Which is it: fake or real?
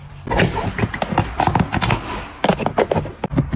real